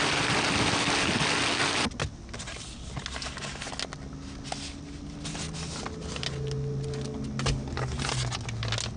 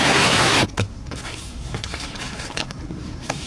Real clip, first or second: first